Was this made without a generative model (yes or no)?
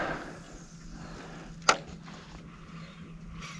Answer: yes